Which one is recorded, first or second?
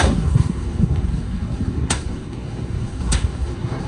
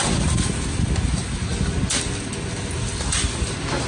second